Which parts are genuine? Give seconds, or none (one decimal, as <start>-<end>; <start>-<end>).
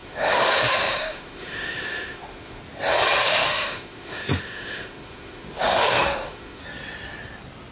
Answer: 2.6-3.2; 6.6-7.7